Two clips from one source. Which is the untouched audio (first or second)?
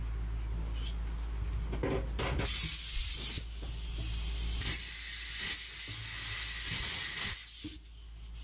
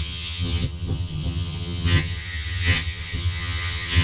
first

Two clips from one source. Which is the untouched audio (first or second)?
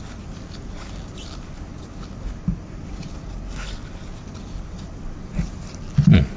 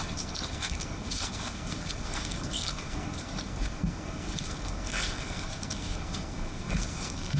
first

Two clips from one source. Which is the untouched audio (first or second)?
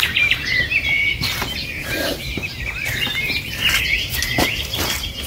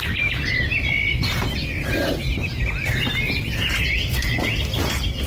second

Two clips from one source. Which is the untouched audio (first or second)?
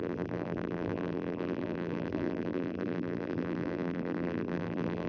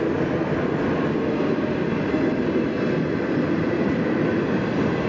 second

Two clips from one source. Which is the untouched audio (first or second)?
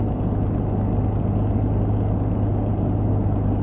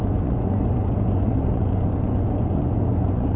first